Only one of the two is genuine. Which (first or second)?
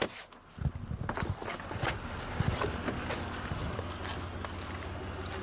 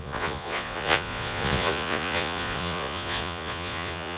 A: first